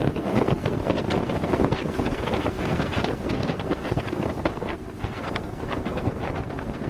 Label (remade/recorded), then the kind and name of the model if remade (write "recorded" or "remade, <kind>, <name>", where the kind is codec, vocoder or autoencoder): remade, codec, SNAC